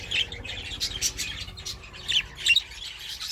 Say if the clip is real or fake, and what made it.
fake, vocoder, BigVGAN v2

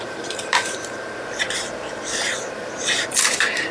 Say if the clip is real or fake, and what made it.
fake, vocoder, BigVGAN v2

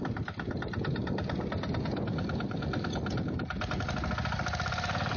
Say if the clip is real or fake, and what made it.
real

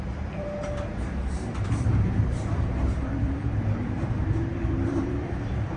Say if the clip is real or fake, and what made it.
fake, vocoder, BigVGAN v2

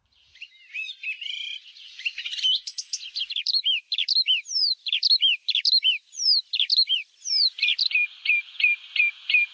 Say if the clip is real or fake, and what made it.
fake, vocoder, BigVGAN v2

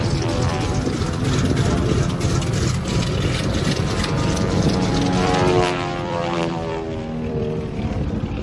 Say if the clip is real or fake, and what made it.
fake, vocoder, BigVGAN v2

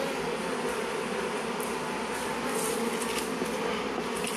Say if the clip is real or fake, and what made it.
real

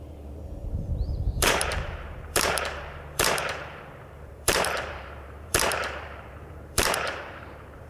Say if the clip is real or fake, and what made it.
fake, vocoder, BigVGAN v2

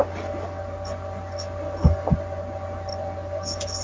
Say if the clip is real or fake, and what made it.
real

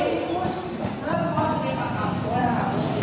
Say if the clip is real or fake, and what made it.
real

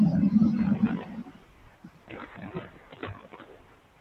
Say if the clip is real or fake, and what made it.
fake, vocoder, BigVGAN v2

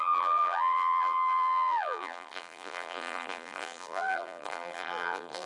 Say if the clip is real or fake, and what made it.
fake, vocoder, BigVGAN v2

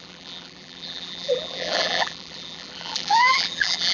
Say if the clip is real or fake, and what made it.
fake, vocoder, BigVGAN v2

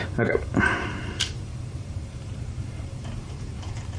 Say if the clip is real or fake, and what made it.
fake, vocoder, BigVGAN v2